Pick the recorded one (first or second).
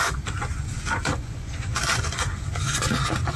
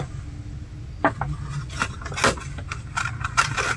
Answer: second